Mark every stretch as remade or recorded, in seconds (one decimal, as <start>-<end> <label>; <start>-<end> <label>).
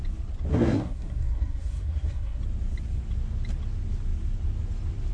0.0-0.5 recorded; 0.5-2.4 remade; 2.4-5.1 recorded